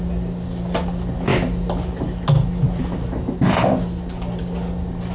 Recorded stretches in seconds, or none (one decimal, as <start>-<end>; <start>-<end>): 0.0-5.1